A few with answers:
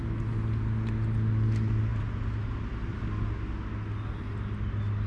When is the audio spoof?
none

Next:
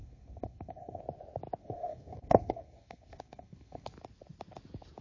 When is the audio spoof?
0.0-1.0 (codec, SNAC); 1.6-3.9

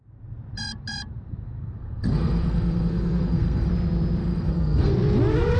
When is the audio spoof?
1.6-3.7 (codec, SNAC); 4.2-4.9